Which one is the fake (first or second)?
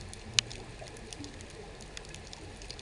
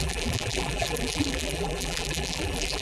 second